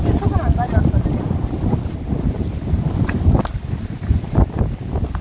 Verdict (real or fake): real